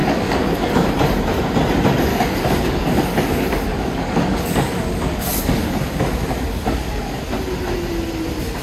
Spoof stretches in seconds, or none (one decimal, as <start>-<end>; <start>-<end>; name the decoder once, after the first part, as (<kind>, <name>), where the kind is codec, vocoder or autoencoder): 0.0-0.9 (codec, DAC); 2.1-7.2